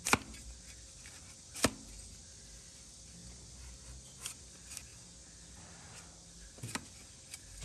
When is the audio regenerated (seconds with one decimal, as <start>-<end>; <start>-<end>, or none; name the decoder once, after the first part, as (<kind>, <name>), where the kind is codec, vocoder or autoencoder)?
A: none